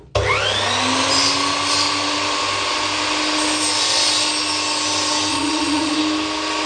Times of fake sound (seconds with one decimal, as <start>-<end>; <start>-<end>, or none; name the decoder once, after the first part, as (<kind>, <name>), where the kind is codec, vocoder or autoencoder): 5.3-6.0 (vocoder, Vocos)